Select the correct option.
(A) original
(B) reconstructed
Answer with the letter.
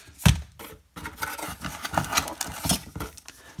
A